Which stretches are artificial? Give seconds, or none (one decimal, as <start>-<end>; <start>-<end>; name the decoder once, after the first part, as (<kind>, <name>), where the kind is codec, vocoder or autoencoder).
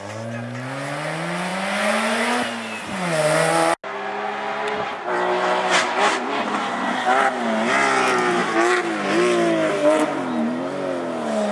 none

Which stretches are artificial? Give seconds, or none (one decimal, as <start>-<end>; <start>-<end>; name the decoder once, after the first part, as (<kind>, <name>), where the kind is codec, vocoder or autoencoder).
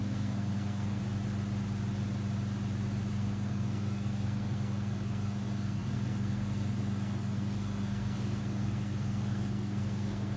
0.0-1.0 (codec, SNAC); 3.1-10.4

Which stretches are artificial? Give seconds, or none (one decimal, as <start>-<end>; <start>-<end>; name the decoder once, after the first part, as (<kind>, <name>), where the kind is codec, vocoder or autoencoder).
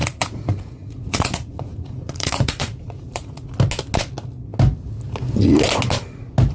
0.0-3.5 (vocoder, Vocos)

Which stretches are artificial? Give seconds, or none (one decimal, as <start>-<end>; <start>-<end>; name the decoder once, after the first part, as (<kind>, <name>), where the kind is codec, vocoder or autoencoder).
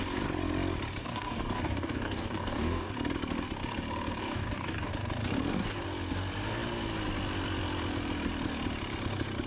1.0-2.9 (codec, DAC); 4.2-4.9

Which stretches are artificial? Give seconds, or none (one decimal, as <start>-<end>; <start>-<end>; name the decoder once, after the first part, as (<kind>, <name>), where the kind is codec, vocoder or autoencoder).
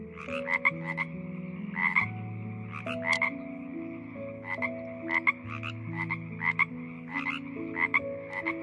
none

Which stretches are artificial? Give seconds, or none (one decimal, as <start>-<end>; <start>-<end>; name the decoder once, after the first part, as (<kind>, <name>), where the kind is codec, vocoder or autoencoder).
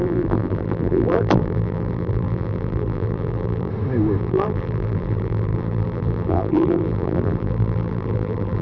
0.0-3.7 (vocoder, BigVGAN v2); 4.2-8.6